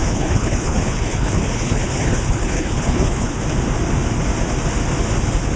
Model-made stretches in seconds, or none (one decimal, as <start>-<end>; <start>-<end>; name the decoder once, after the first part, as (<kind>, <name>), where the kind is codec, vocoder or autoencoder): 0.0-3.4 (codec, HILCodec)